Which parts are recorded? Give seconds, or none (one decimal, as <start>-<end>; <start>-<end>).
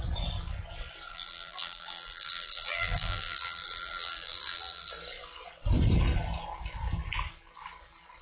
0.0-1.1; 4.9-8.2